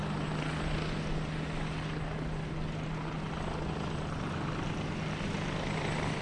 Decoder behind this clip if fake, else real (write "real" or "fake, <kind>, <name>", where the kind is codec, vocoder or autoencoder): real